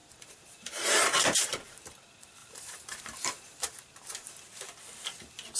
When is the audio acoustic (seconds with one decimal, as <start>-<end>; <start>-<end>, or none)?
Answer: 1.9-2.4; 4.3-5.6